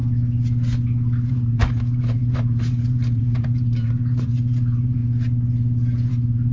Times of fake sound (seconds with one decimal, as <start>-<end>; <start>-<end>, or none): 1.3-5.0; 6.1-6.5